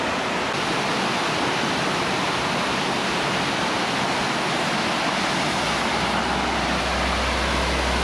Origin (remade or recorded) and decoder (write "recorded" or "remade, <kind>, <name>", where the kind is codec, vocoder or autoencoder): recorded